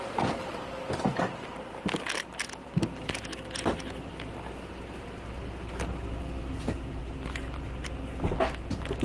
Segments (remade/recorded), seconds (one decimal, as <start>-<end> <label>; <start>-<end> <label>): 0.0-7.0 recorded; 7.0-7.6 remade; 7.6-9.0 recorded